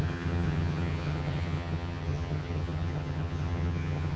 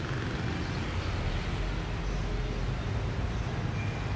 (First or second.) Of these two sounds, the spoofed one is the first